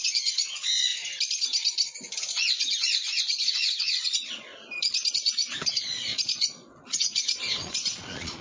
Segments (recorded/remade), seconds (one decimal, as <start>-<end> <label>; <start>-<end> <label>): 0.0-0.9 remade; 0.9-2.3 recorded; 2.3-4.5 remade; 4.5-5.1 recorded; 5.1-8.4 remade